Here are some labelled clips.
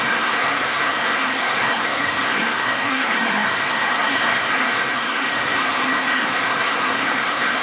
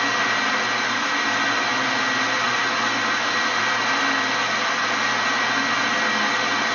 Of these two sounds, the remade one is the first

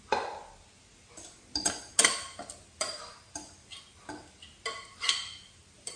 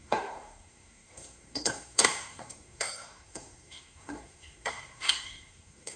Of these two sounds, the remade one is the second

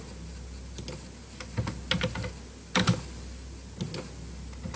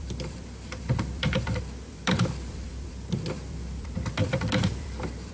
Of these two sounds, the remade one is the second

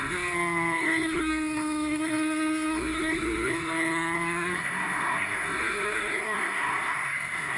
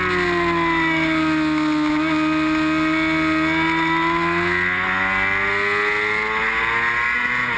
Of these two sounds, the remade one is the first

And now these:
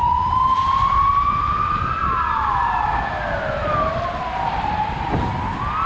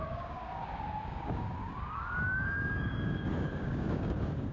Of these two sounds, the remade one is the second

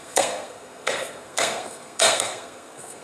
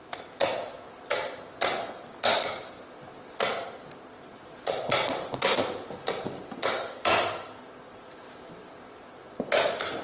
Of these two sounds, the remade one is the first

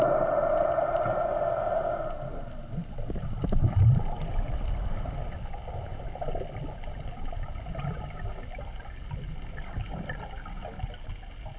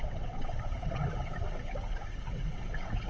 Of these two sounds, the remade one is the second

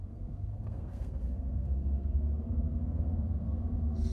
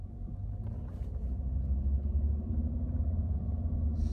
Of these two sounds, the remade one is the first